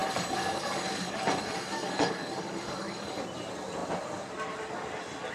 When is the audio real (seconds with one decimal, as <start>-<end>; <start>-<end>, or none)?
3.2-5.3